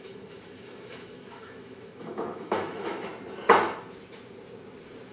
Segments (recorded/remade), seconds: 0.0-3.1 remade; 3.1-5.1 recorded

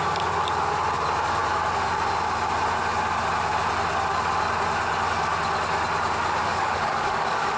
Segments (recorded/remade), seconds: 0.0-6.4 recorded; 6.4-7.6 remade

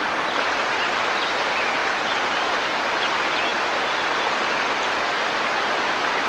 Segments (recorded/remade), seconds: 0.0-1.8 recorded; 1.8-2.8 remade; 2.8-6.3 recorded